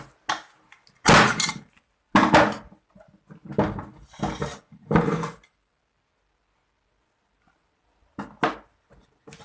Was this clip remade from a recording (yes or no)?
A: no